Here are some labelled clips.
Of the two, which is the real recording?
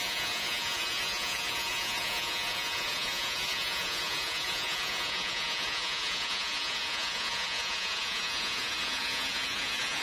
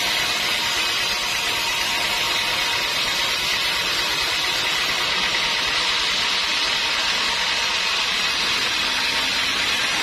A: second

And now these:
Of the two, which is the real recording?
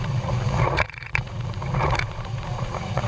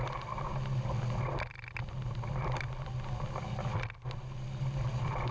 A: second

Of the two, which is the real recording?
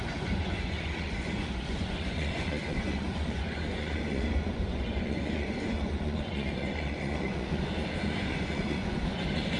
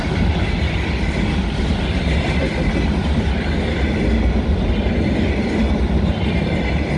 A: second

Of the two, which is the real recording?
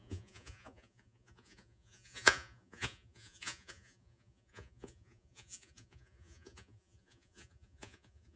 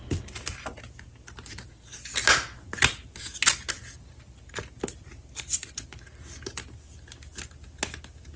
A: second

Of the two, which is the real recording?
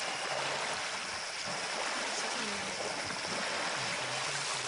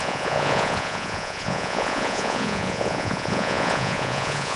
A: first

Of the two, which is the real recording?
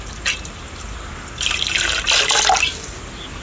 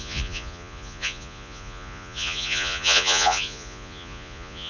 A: first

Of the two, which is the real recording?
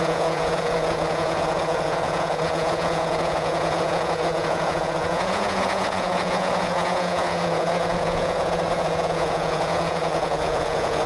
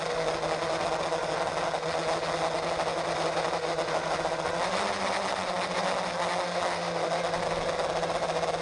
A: second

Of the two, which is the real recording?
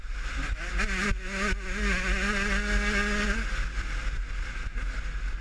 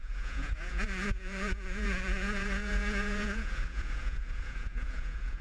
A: first